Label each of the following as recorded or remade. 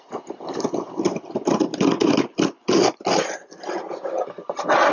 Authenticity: recorded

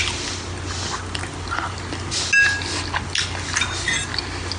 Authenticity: recorded